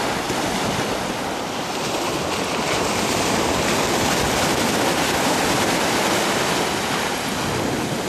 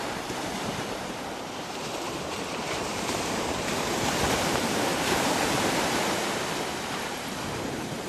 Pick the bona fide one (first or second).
first